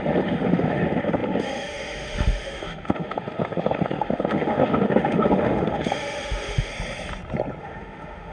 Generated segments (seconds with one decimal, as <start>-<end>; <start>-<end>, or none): 0.0-6.7; 7.6-8.3